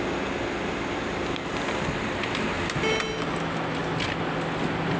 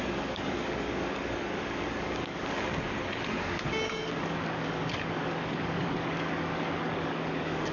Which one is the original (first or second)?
first